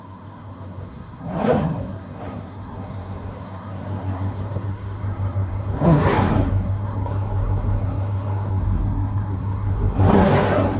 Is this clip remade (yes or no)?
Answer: yes